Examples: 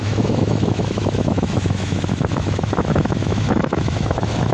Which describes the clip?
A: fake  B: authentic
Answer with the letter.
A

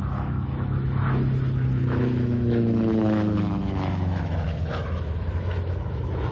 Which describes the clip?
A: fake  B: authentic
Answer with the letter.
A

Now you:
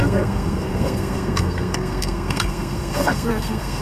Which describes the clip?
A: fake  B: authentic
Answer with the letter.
A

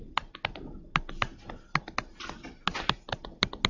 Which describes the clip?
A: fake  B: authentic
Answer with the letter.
B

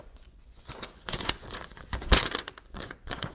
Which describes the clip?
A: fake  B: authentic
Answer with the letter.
A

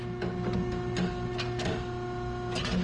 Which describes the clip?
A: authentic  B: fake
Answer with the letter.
A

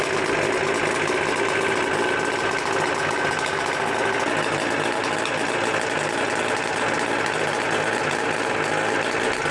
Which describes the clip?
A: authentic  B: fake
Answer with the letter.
A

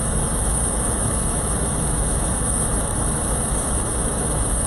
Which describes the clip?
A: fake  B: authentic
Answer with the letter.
A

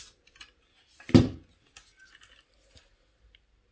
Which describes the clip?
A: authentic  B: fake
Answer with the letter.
A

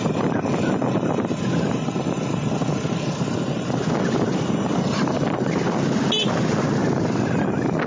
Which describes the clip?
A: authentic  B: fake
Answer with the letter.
A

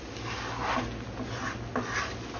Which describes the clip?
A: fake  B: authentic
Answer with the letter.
B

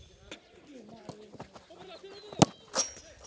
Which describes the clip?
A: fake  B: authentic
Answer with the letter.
B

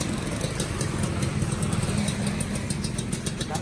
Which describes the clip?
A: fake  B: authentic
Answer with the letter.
B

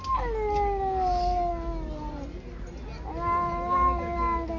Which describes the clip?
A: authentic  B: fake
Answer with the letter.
A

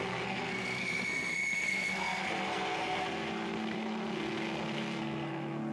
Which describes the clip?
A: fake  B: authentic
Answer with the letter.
A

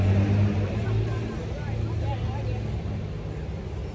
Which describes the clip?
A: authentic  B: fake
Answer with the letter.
A